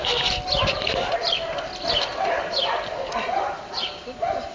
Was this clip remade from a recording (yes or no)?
no